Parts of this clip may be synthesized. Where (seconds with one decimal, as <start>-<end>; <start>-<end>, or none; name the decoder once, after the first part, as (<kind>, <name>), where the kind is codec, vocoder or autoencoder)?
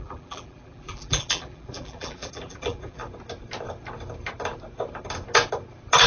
0.0-3.0 (vocoder, BigVGAN v2)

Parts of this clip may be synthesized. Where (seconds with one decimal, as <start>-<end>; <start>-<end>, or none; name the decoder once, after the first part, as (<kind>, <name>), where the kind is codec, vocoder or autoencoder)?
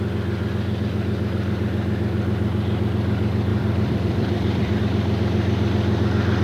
3.5-4.8 (vocoder, BigVGAN v2)